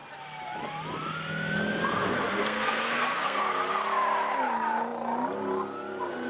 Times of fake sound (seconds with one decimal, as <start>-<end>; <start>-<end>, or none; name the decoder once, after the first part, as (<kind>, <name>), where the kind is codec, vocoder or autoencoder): 2.1-3.4 (codec, SNAC)